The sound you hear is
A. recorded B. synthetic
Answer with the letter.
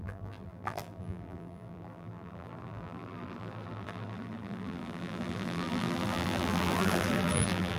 B